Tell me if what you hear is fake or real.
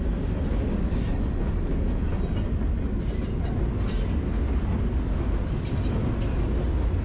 real